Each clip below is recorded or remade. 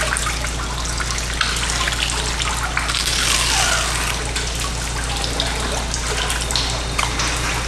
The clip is recorded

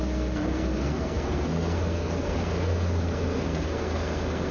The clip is remade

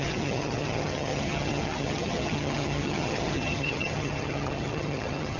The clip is remade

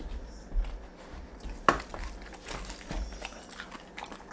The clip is recorded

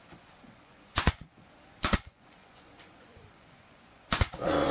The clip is remade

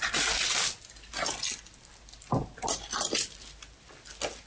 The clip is recorded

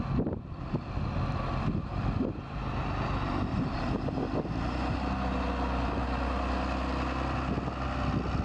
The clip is recorded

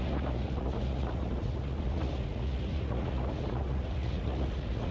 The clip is remade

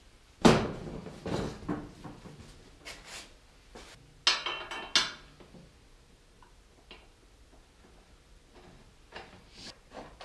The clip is recorded